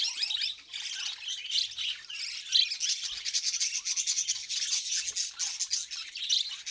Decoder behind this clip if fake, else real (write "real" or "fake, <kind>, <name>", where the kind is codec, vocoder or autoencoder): real